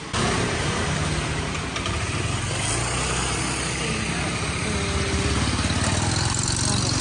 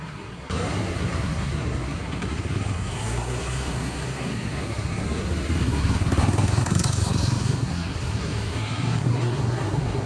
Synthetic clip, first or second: second